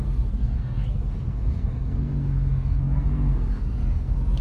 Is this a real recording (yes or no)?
no